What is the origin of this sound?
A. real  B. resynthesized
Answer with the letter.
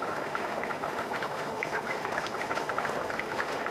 B